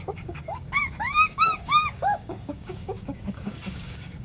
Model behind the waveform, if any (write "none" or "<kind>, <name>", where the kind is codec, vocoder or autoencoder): codec, DAC